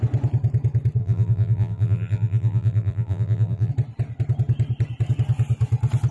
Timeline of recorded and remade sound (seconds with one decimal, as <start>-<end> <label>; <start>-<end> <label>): 0.0-1.0 recorded; 1.0-3.7 remade; 3.7-6.1 recorded

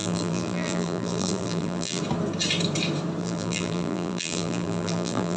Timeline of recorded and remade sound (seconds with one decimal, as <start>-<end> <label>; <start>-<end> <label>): 0.0-2.0 remade; 2.0-3.2 recorded; 3.2-5.4 remade

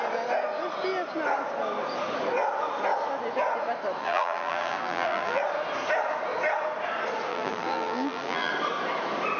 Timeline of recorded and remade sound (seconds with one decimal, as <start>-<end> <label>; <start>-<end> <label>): 0.0-4.0 recorded; 4.0-5.4 remade; 5.4-7.3 recorded; 7.3-8.5 remade; 8.5-9.4 recorded

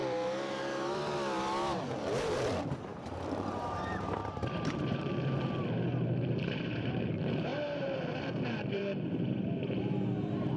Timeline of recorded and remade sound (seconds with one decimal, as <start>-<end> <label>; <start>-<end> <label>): 0.0-2.2 recorded; 2.2-10.6 remade

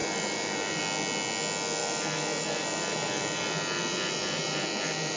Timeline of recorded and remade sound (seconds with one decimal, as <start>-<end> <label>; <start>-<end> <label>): 0.0-0.8 remade; 0.8-1.8 recorded; 1.8-5.2 remade

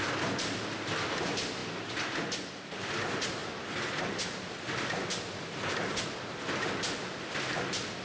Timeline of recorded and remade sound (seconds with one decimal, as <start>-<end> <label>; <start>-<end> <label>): 0.0-1.6 remade; 1.6-2.2 recorded; 2.2-3.4 remade; 3.4-7.4 recorded; 7.4-8.0 remade